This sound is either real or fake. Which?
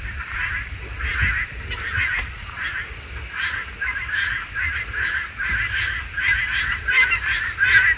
real